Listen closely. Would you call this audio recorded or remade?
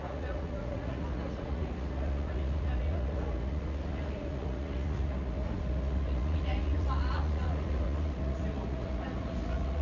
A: remade